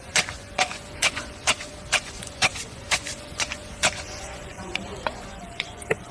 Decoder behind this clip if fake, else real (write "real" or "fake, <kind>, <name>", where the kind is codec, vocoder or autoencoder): fake, vocoder, Vocos